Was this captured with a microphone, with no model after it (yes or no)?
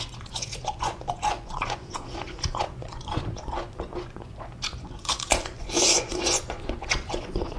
no